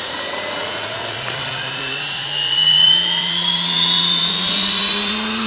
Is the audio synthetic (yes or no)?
yes